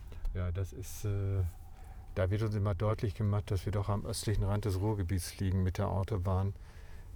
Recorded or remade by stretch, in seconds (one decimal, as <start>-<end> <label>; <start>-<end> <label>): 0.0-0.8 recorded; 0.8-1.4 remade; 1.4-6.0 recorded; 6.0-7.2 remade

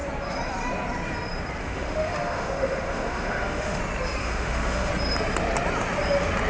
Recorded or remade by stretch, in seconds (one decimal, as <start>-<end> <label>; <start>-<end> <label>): 0.0-1.6 recorded; 1.6-3.8 remade; 3.8-4.2 recorded; 4.2-4.9 remade; 4.9-6.5 recorded

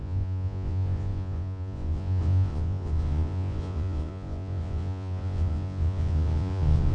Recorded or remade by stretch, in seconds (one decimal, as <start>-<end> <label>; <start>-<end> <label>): 0.0-6.9 remade

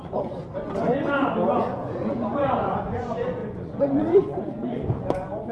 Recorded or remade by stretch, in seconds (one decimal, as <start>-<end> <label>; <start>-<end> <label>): 0.0-0.5 remade; 0.5-1.6 recorded; 1.6-5.5 remade